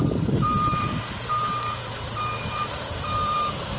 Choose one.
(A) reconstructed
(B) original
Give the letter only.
A